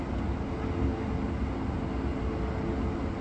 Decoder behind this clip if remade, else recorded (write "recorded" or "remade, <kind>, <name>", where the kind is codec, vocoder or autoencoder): recorded